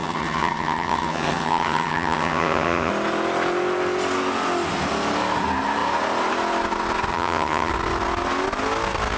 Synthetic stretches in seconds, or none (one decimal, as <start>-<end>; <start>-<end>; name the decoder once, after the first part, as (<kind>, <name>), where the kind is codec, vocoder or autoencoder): 0.0-2.9 (vocoder, HiFi-GAN); 7.1-7.7

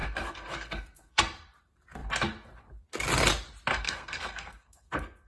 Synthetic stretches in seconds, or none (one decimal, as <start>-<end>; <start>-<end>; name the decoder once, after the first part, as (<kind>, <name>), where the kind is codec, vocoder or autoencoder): 0.0-1.2 (codec, SNAC); 3.7-5.3